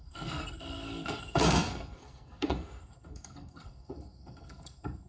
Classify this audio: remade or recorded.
remade